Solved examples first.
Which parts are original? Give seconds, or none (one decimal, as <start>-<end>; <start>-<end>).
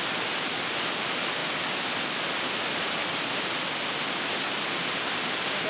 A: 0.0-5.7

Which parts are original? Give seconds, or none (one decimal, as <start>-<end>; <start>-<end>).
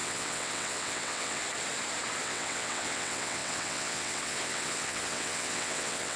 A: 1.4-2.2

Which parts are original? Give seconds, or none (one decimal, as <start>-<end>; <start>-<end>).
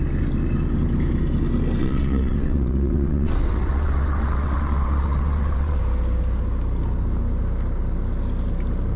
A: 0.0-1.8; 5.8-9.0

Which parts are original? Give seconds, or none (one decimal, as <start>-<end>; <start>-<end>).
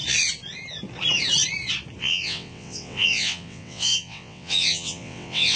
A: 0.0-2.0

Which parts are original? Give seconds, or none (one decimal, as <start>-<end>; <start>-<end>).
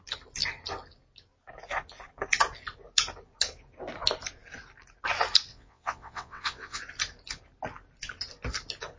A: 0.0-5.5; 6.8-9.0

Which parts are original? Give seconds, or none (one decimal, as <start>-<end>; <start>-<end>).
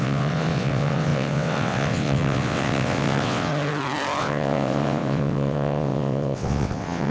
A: 3.5-4.2